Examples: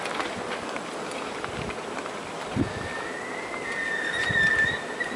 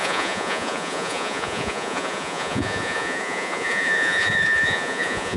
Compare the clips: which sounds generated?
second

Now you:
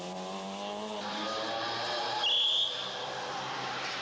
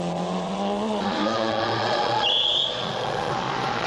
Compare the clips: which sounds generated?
second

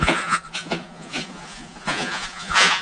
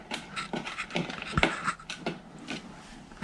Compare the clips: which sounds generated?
first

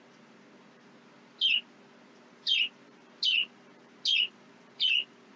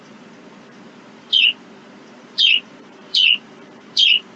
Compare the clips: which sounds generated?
second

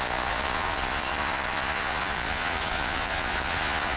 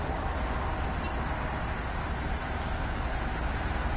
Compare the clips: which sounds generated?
first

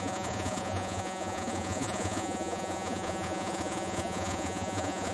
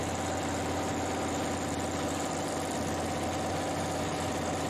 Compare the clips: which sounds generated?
first